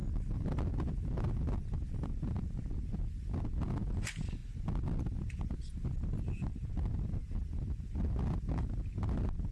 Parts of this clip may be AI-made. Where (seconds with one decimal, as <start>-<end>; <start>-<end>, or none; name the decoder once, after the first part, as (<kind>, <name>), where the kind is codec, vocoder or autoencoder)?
none